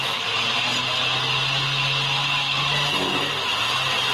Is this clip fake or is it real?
real